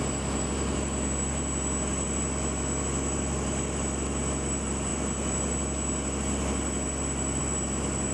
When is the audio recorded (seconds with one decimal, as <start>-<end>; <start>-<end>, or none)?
0.0-8.1